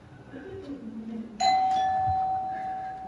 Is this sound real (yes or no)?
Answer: yes